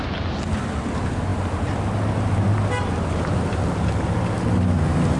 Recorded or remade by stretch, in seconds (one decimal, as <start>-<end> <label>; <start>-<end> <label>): 0.0-5.2 recorded